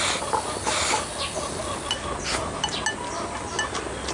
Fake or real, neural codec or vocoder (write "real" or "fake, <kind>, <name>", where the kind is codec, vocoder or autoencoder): real